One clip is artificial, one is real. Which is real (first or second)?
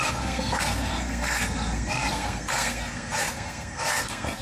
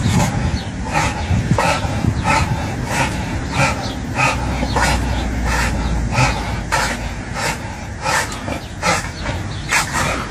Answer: second